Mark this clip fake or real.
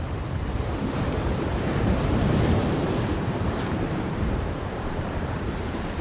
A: fake